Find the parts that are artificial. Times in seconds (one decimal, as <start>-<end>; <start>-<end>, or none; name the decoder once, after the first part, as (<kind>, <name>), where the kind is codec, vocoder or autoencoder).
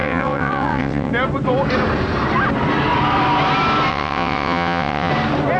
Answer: 0.0-1.1 (vocoder, WaveNeXt); 3.9-5.1